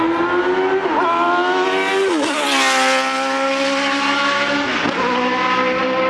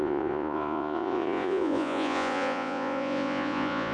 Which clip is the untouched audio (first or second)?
first